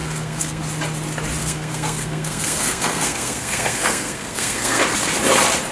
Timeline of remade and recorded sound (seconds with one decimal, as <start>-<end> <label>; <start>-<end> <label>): 0.0-0.6 remade; 0.6-1.4 recorded; 1.4-4.8 remade; 4.8-5.7 recorded